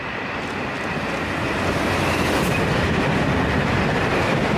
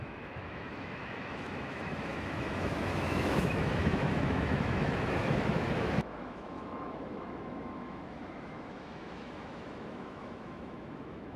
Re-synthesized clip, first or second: second